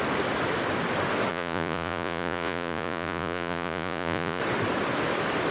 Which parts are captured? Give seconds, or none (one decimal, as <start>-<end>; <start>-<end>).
0.0-1.3; 4.4-5.5